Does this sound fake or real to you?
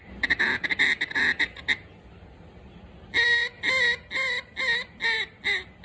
real